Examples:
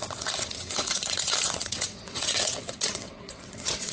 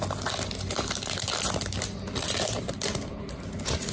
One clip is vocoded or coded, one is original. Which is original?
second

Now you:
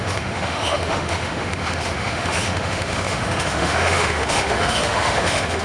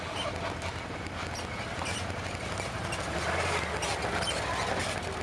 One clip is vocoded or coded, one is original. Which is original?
second